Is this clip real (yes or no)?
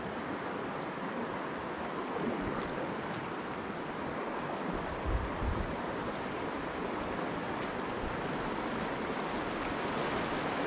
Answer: yes